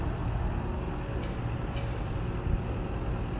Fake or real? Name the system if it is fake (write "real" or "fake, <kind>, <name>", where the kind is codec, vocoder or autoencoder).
real